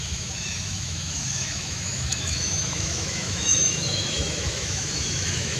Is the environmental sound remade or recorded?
remade